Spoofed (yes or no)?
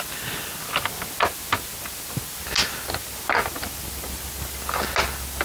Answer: no